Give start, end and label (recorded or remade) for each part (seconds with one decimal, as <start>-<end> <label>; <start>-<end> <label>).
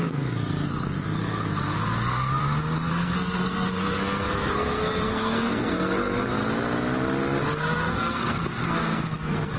0.0-2.4 remade; 2.4-2.9 recorded; 2.9-6.3 remade; 6.3-7.5 recorded; 7.5-9.6 remade